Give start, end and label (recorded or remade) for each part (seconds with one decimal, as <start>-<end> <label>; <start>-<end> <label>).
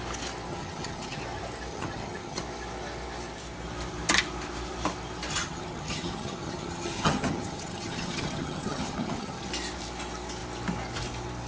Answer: 0.0-0.5 recorded; 0.5-1.2 remade; 1.2-1.7 recorded; 1.7-2.4 remade; 2.4-5.3 recorded; 5.3-9.5 remade; 9.5-11.5 recorded